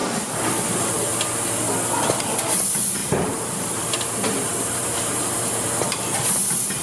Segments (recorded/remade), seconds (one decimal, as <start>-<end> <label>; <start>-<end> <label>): 0.0-3.0 recorded; 3.0-5.7 remade; 5.7-6.8 recorded